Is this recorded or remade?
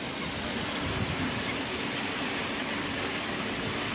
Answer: recorded